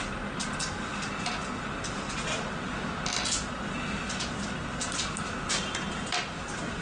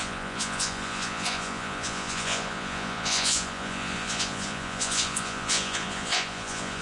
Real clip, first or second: first